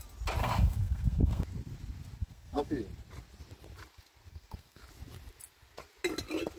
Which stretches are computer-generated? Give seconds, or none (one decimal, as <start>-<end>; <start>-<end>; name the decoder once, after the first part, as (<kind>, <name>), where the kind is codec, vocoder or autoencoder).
0.4-1.4 (codec, SNAC); 2.2-2.7; 4.3-4.8